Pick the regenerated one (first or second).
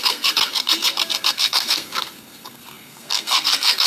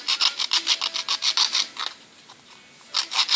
first